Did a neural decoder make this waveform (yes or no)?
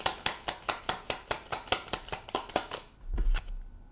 no